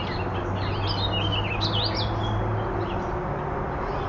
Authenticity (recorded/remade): recorded